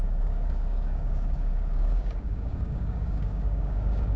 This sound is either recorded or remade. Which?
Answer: remade